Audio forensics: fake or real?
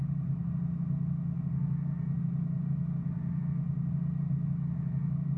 real